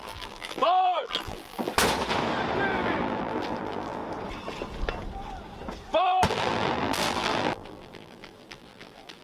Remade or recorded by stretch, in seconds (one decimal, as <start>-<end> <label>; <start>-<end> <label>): 0.0-1.7 remade; 1.7-2.7 recorded; 2.7-4.0 remade; 4.0-6.3 recorded; 6.3-9.2 remade